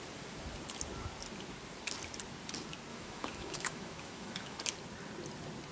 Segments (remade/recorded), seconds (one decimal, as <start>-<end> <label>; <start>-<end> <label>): 0.0-2.9 recorded; 2.9-4.6 remade; 4.6-5.7 recorded